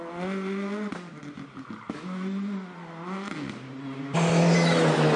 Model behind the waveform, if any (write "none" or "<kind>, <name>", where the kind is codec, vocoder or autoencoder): none